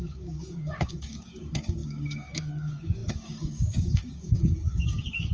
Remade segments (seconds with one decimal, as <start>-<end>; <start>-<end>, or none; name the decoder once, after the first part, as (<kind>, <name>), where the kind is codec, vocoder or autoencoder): 0.0-5.3 (codec, DAC)